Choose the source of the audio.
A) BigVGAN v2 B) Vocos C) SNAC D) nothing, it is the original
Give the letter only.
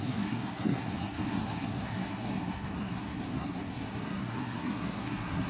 C